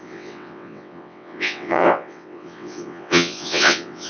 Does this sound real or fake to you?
fake